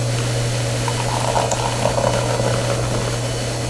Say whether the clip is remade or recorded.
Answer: recorded